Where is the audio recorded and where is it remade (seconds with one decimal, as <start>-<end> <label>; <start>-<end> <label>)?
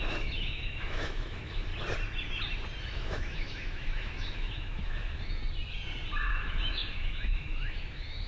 0.0-1.7 remade; 1.7-2.9 recorded; 2.9-5.4 remade; 5.4-6.3 recorded; 6.3-8.3 remade